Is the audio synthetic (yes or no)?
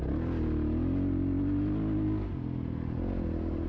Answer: no